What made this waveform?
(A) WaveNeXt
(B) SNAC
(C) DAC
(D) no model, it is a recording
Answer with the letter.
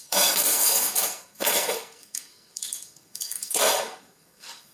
B